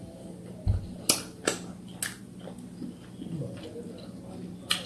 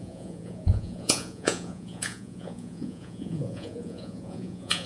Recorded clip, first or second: first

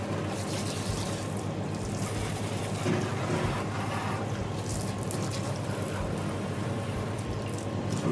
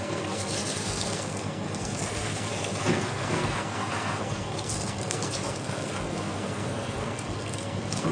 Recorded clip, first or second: first